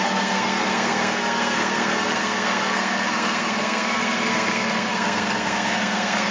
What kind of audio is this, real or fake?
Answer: fake